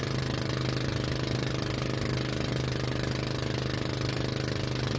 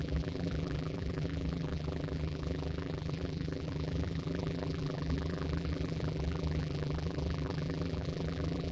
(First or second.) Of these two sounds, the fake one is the second